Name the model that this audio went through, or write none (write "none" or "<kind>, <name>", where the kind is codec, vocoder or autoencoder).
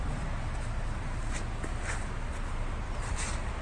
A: none